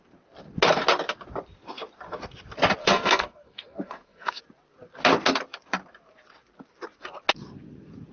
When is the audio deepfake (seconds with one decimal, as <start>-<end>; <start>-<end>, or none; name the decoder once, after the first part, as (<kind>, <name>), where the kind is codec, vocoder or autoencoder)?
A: 2.8-4.4 (codec, SNAC)